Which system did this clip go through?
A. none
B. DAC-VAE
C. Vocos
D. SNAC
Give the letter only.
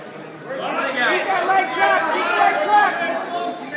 A